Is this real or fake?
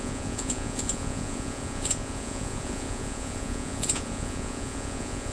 fake